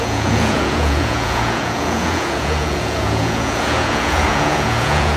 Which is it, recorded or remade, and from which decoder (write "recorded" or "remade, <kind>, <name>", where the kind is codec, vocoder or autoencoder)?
remade, vocoder, Vocos